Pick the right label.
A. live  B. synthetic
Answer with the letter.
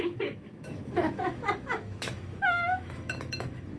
B